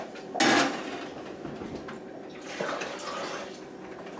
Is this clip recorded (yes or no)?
yes